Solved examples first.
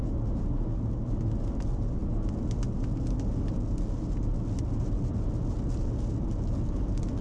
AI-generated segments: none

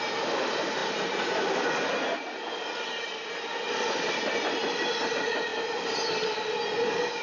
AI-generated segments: none

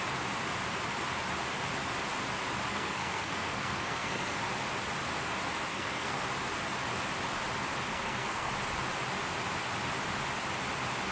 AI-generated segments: 2.7-4.4; 5.7-6.2; 7.9-8.5

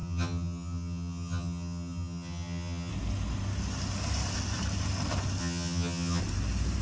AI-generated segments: 0.0-2.9; 5.4-6.2

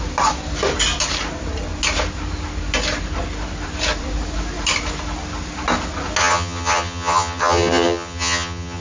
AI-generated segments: 6.2-8.8